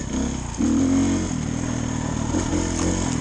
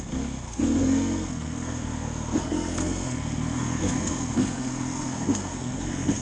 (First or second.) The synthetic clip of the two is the second